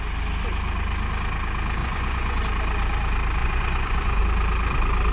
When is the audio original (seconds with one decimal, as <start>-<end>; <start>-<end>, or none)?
0.0-1.8; 2.4-3.4; 4.2-5.1